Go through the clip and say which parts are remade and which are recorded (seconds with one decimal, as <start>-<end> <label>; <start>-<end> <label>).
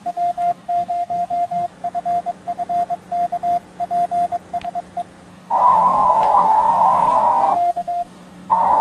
0.0-1.7 remade; 1.7-5.3 recorded; 5.3-8.8 remade